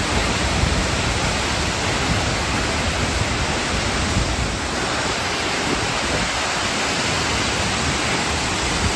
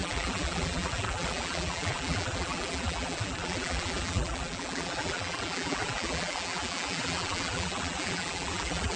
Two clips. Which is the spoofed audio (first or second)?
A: second